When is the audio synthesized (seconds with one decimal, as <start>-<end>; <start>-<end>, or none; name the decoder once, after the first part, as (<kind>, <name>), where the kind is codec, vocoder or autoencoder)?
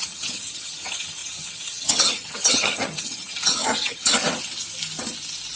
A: 0.0-4.2 (vocoder, HiFi-GAN)